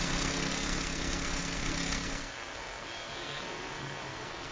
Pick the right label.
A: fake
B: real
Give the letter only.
A